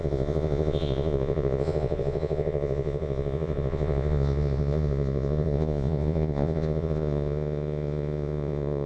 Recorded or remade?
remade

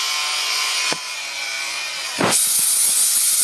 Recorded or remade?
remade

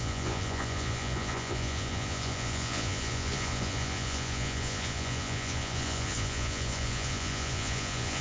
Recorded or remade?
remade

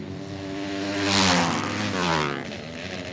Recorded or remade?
recorded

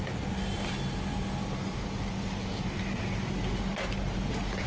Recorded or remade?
recorded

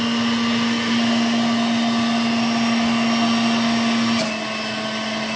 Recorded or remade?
recorded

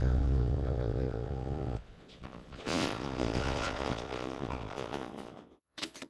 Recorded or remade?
remade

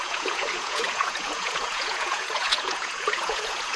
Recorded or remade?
remade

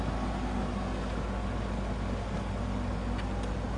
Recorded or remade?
recorded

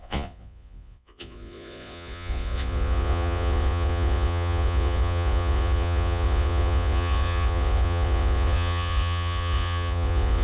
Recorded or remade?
remade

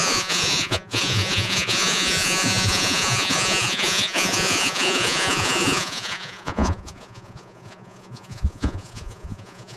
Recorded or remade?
remade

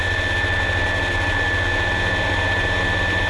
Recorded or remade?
recorded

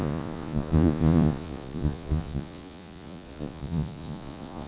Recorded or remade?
remade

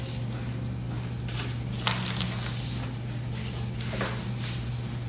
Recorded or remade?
recorded